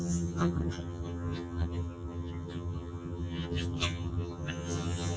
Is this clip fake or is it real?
fake